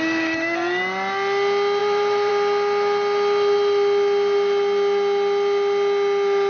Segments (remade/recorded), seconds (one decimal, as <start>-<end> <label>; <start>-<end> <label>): 0.0-1.8 recorded; 1.8-2.3 remade; 2.3-6.5 recorded

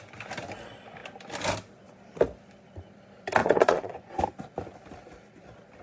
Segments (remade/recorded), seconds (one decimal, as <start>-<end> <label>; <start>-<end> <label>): 0.0-3.4 recorded; 3.4-4.2 remade; 4.2-5.8 recorded